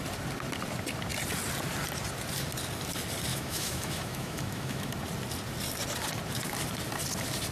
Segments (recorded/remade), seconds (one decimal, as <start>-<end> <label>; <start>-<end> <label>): 0.0-3.3 recorded; 3.3-4.9 remade; 4.9-7.5 recorded